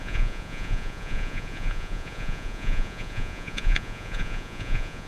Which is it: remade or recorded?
remade